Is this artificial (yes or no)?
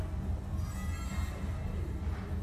no